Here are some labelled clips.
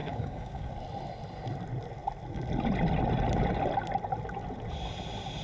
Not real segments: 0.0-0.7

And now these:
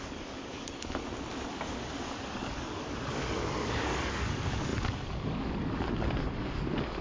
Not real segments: 0.0-1.0; 1.5-7.0

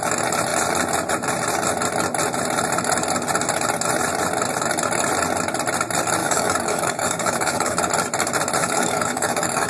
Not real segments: 6.2-7.9; 8.6-9.7

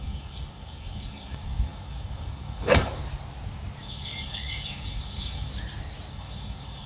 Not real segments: 0.0-3.0; 3.8-5.5; 6.1-6.9

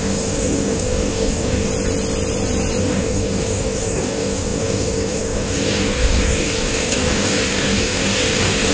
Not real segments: 0.0-1.7; 2.8-8.7

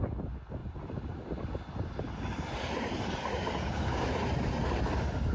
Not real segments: none

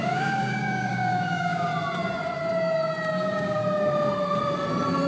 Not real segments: 0.0-1.7; 3.1-3.6